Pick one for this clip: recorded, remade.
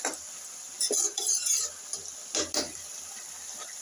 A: recorded